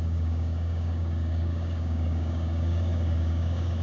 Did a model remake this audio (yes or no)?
yes